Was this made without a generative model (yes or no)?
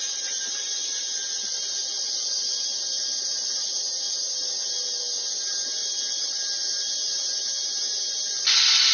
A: yes